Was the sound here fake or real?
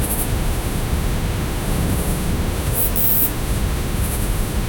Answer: fake